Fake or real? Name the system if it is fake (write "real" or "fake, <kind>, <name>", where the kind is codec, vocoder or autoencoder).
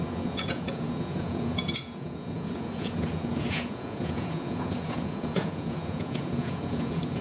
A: fake, vocoder, Vocos